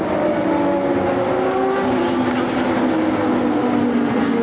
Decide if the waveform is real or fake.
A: real